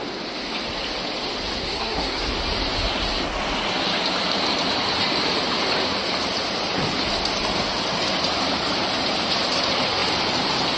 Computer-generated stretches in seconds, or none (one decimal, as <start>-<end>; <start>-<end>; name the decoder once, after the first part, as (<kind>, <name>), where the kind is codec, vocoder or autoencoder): 1.6-2.3 (codec, SNAC)